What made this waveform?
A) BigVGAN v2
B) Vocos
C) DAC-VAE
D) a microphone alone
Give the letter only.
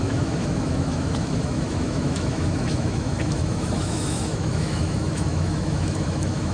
C